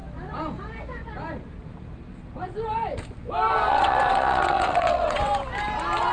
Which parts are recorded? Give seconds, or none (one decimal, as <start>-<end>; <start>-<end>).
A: 0.0-3.7; 5.3-6.1